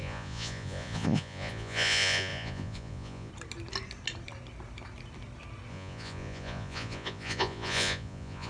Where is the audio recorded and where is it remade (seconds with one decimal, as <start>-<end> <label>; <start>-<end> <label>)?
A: 0.0-3.3 remade; 3.3-5.7 recorded; 5.7-8.5 remade